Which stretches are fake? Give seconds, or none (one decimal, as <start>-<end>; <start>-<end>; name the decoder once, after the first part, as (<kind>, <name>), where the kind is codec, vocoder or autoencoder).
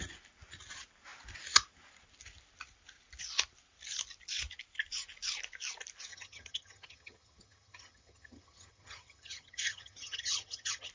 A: 6.1-10.9 (vocoder, HiFi-GAN)